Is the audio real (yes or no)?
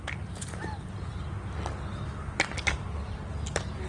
yes